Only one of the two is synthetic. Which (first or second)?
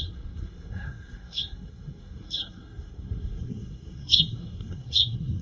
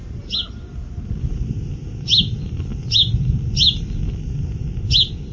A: first